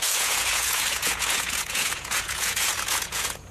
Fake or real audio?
fake